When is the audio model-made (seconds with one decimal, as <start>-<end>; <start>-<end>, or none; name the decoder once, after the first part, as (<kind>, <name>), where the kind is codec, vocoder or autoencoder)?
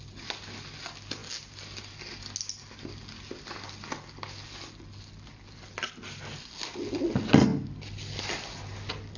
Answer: none